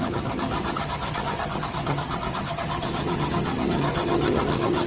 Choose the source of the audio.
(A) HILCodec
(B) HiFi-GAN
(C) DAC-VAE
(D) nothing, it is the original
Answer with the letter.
B